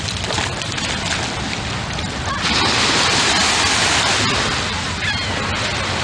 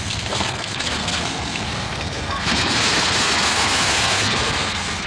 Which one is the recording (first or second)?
first